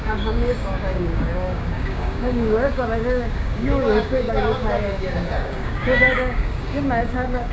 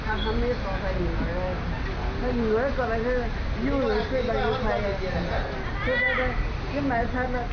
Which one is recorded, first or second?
second